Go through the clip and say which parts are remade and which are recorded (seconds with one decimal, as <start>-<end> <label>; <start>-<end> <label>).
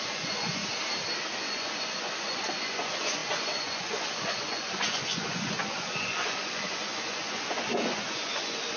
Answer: 0.0-0.6 remade; 0.6-1.4 recorded; 1.4-8.8 remade